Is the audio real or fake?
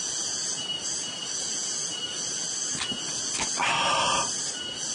real